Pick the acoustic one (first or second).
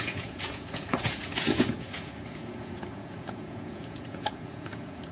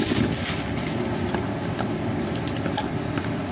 second